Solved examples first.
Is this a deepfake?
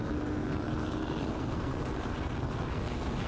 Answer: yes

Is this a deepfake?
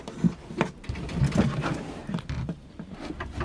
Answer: no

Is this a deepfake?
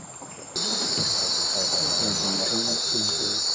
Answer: no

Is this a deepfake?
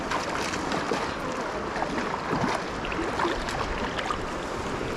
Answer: no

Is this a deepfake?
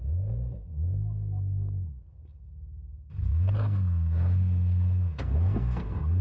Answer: yes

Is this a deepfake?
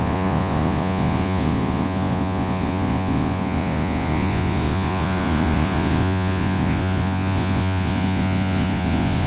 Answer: yes